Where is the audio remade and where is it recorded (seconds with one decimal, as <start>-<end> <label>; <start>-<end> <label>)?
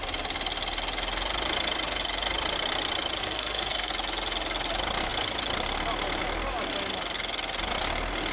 0.0-3.2 recorded; 3.2-3.9 remade; 3.9-8.3 recorded